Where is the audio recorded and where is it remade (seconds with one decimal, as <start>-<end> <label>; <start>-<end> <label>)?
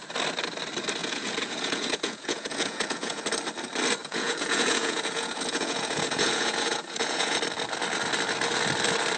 0.0-1.0 recorded; 1.0-3.2 remade; 3.2-4.0 recorded; 4.0-7.4 remade; 7.4-9.2 recorded